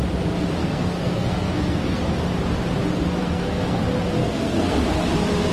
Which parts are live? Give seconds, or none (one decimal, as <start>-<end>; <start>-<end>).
0.0-0.6; 2.0-3.2; 3.8-4.2; 4.8-5.5